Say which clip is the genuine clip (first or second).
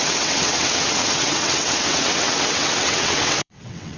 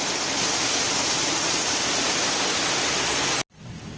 second